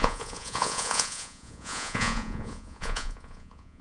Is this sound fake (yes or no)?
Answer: yes